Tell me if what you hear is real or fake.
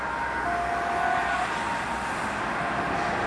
real